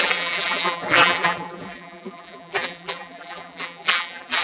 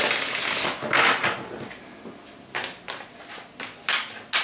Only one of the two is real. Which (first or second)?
second